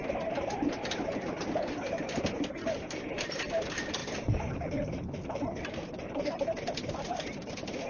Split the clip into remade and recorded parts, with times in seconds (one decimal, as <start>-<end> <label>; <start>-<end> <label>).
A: 0.0-4.0 recorded; 4.0-7.9 remade